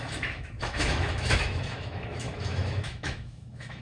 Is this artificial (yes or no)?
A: yes